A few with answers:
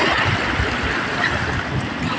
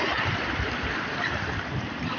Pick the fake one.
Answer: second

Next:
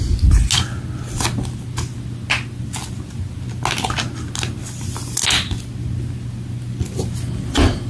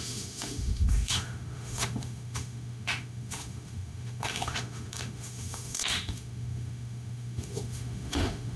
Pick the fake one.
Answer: second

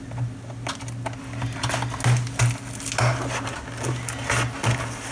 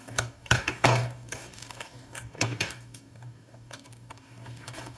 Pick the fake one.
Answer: second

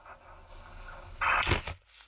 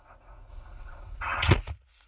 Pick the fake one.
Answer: second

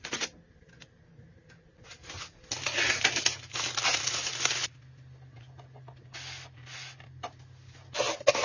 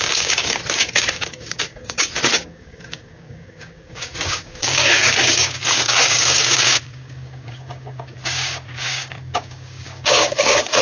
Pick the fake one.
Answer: second